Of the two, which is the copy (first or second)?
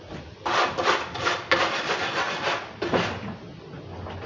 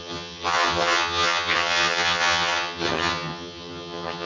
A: second